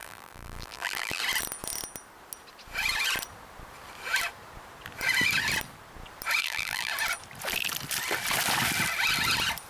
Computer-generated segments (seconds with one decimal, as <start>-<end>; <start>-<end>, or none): 0.0-1.2; 6.4-6.9